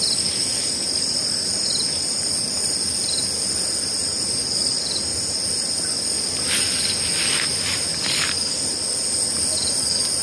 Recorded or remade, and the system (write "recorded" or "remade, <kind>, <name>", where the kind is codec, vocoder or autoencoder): recorded